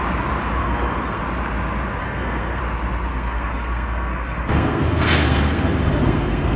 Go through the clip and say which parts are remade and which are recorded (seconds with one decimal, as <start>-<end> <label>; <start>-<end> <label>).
0.0-0.6 recorded; 0.6-1.2 remade; 1.2-2.0 recorded; 2.0-2.6 remade; 2.6-3.1 recorded; 3.1-6.6 remade